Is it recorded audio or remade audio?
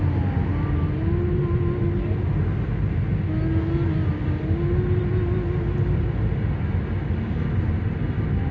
recorded